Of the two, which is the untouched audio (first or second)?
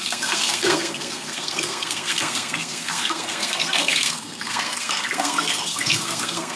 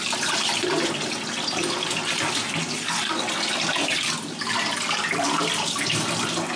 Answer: second